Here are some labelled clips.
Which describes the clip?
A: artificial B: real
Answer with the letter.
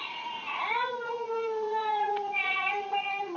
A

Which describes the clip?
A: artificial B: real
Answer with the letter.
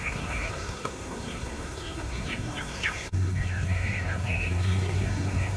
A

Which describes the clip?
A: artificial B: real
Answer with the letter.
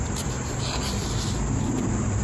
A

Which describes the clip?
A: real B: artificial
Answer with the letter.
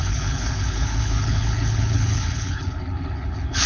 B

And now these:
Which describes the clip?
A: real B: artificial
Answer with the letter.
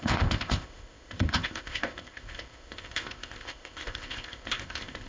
B